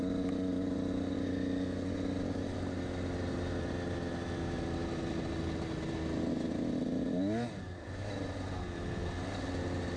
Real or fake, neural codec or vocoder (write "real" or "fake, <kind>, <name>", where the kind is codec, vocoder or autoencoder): real